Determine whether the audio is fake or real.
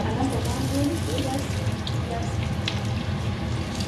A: real